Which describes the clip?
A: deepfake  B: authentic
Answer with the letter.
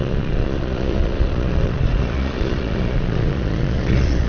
A